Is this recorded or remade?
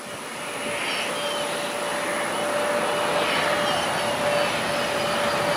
recorded